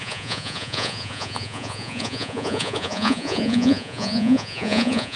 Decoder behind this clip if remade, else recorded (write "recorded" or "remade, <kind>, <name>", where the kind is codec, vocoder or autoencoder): remade, vocoder, Vocos